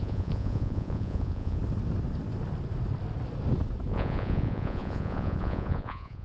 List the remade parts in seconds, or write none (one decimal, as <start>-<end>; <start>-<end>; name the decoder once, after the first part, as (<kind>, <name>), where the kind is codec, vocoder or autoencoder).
0.0-1.6 (vocoder, Vocos); 3.9-6.2